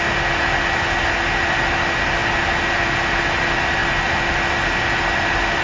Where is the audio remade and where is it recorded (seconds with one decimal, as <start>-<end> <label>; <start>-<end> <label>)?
0.0-5.6 recorded